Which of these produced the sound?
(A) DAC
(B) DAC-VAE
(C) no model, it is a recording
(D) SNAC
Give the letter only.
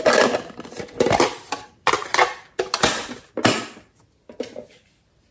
C